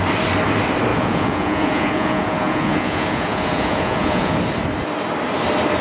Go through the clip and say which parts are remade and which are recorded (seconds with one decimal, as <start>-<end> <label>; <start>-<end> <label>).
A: 0.0-0.9 recorded; 0.9-4.4 remade; 4.4-5.8 recorded